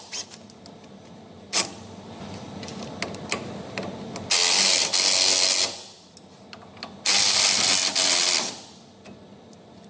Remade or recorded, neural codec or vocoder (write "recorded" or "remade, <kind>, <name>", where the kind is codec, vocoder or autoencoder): recorded